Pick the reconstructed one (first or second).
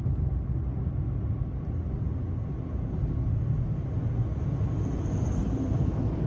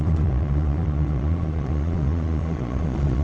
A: second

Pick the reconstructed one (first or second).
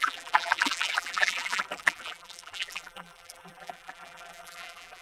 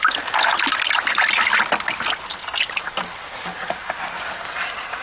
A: first